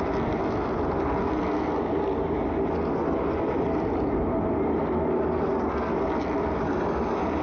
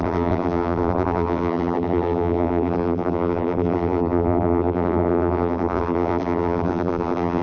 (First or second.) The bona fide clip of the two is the first